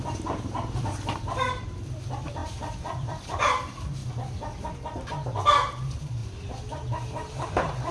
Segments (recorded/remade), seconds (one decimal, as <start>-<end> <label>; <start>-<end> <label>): 0.0-4.0 remade; 4.0-4.7 recorded; 4.7-7.9 remade